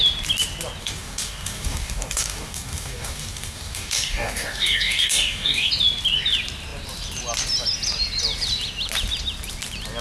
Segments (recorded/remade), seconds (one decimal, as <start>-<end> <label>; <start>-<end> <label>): 0.0-0.8 recorded; 0.8-5.7 remade; 5.7-10.0 recorded